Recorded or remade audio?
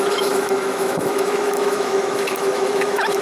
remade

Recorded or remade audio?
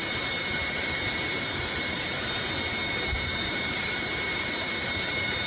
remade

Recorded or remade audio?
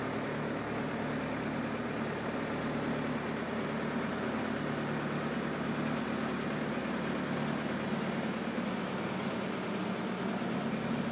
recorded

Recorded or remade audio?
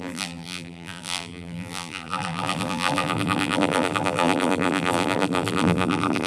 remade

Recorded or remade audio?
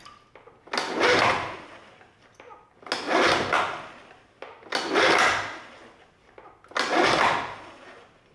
recorded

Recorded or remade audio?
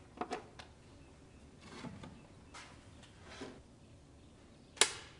recorded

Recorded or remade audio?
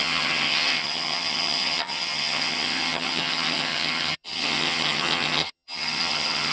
remade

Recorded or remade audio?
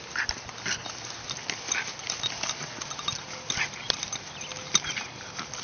recorded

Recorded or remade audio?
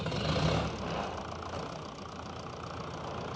recorded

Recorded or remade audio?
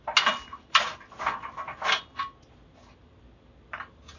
recorded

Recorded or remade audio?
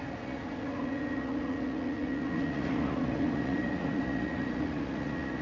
remade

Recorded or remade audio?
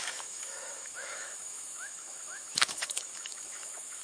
remade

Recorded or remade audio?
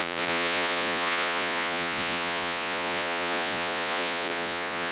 remade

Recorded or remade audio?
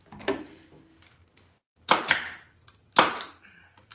recorded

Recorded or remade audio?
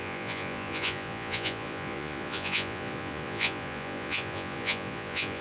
remade